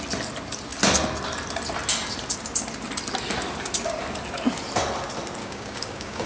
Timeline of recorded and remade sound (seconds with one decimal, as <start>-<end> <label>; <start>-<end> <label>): 0.0-5.4 recorded; 5.4-6.3 remade